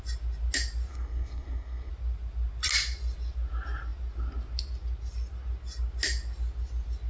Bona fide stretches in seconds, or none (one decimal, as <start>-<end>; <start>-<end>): 0.0-0.9; 1.9-7.1